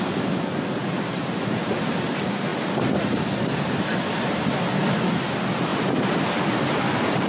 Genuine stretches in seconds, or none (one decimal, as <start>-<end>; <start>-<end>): 0.0-7.3